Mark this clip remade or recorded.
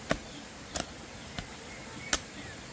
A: recorded